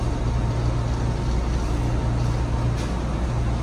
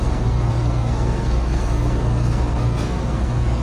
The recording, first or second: first